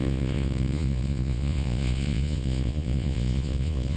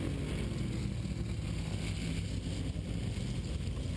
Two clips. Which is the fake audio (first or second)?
first